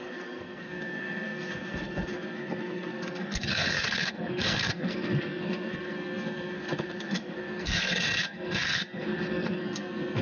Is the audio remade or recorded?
remade